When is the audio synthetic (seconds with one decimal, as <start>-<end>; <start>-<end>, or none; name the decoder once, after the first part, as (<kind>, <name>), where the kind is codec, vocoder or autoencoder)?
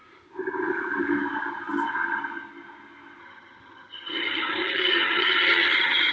3.2-6.1 (vocoder, HiFi-GAN)